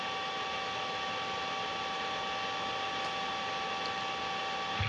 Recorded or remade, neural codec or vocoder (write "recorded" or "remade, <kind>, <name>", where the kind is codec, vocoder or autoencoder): recorded